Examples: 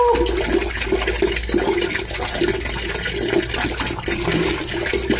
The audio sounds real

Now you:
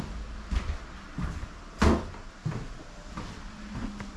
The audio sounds real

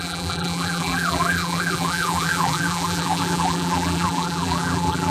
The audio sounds fake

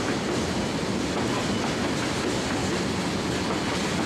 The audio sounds real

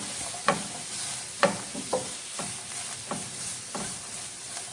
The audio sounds fake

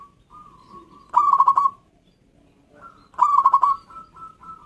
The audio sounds real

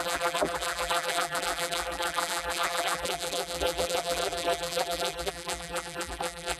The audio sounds fake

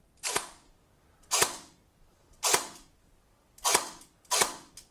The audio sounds real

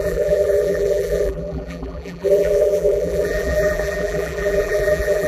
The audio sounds fake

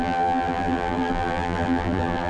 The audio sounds fake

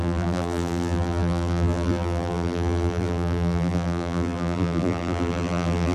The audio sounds fake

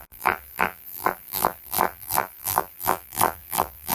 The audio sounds fake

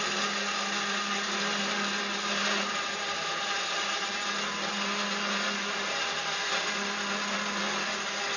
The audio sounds real